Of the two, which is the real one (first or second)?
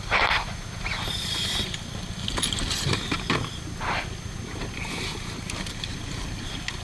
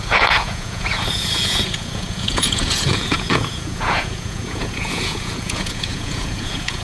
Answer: first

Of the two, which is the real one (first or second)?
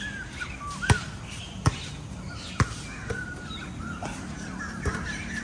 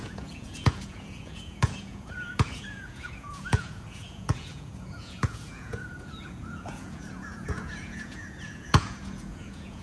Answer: first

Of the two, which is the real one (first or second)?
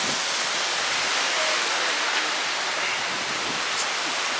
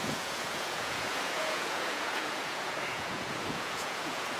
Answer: first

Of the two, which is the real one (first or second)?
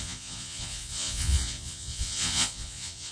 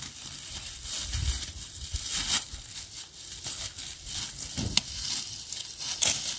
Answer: second